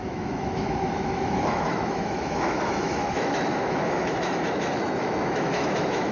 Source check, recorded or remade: remade